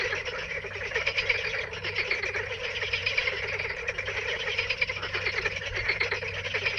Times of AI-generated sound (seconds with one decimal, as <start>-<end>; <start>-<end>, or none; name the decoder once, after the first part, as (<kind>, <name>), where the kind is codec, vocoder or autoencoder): none